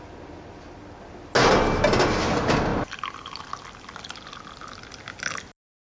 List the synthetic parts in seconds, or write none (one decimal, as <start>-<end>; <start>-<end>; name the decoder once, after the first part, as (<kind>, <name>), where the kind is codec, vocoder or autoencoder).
none